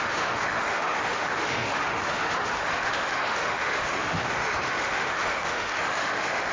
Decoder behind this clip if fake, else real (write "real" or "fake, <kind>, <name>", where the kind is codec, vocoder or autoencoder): fake, autoencoder, DAC-VAE